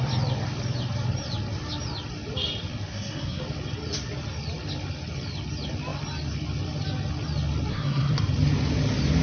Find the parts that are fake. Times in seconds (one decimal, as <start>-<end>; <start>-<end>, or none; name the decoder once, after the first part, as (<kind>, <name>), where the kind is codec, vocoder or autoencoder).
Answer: 2.9-3.4 (codec, SNAC); 7.7-8.2